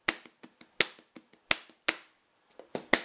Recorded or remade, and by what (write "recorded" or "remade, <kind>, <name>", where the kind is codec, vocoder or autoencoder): recorded